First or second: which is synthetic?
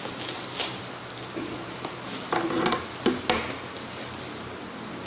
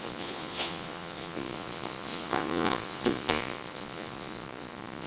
second